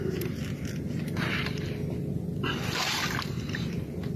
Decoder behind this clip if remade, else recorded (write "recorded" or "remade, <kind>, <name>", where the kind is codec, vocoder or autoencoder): recorded